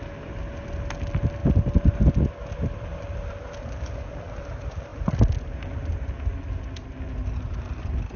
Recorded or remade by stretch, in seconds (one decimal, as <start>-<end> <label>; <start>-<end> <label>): 0.0-8.2 recorded